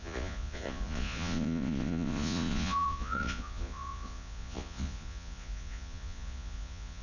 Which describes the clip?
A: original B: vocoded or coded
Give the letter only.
B